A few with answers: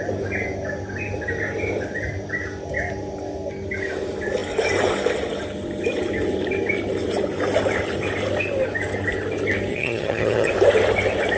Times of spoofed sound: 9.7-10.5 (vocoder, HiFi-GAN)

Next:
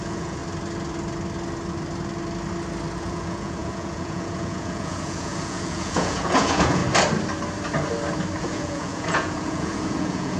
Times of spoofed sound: 0.0-0.4 (vocoder, Vocos); 3.0-6.8; 8.4-10.4

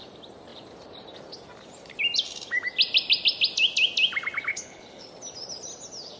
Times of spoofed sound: 4.5-5.1 (codec, HILCodec)